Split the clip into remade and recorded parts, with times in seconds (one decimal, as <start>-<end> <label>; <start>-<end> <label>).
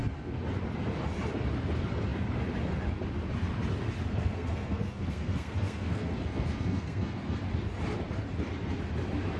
0.0-4.1 recorded; 4.1-7.4 remade; 7.4-9.4 recorded